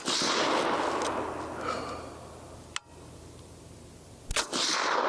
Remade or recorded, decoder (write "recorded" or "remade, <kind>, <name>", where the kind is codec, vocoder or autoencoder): recorded